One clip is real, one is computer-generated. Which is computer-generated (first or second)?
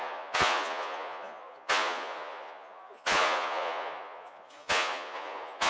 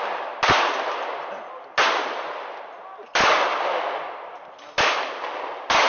first